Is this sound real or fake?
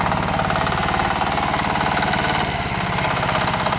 real